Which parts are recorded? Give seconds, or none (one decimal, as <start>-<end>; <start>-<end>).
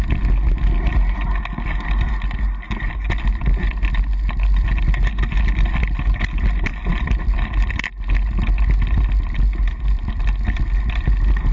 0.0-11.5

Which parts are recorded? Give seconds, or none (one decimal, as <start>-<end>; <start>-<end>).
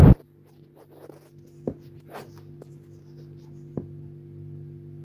0.0-5.0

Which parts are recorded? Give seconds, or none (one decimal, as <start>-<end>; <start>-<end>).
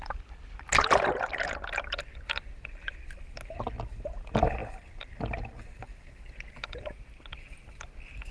0.0-8.3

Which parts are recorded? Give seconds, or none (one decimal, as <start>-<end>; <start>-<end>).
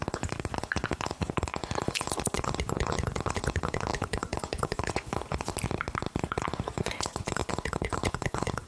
5.5-6.2